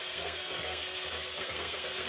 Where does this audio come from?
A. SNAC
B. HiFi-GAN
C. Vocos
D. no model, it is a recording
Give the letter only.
A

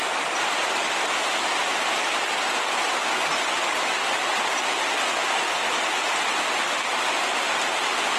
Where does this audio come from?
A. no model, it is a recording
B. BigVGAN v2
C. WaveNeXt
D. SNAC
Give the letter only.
A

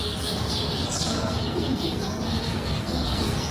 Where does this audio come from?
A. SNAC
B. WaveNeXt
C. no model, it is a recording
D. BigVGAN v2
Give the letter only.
A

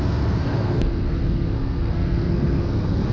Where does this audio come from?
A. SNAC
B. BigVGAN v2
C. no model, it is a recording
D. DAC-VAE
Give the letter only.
A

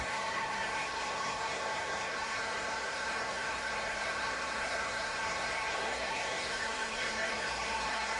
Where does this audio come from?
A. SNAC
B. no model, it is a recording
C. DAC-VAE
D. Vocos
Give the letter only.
A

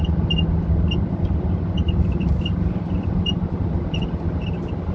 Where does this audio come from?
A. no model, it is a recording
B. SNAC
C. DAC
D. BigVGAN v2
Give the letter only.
A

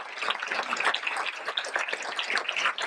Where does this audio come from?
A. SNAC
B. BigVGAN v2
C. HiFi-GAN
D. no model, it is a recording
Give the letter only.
D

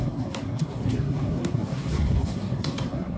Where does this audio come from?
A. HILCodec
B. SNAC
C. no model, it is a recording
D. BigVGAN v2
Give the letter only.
B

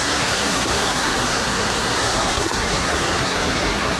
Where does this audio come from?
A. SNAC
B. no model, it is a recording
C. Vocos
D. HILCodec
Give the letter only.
A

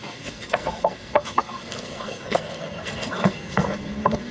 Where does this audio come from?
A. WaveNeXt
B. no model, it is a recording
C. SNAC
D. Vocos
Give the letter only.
C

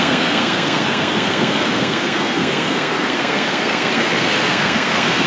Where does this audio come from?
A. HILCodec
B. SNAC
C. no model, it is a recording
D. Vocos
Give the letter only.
B